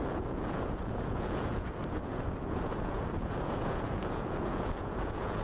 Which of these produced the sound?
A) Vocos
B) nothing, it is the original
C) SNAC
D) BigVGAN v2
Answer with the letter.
A